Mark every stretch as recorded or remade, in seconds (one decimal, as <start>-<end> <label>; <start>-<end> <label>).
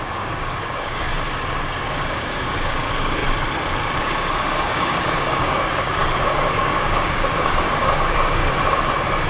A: 0.0-1.1 remade; 1.1-1.8 recorded; 1.8-3.2 remade; 3.2-4.0 recorded; 4.0-8.4 remade; 8.4-9.3 recorded